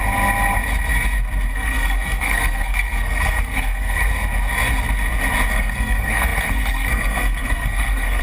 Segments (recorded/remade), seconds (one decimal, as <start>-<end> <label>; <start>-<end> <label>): 0.0-1.5 recorded; 1.5-4.1 remade; 4.1-5.5 recorded; 5.5-8.2 remade